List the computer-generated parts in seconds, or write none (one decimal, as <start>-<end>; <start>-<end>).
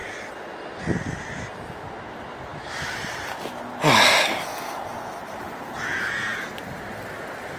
2.5-3.2